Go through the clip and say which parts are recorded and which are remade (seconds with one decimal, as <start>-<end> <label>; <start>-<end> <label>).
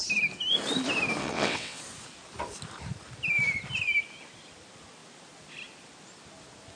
0.0-1.2 recorded; 1.2-1.8 remade; 1.8-6.8 recorded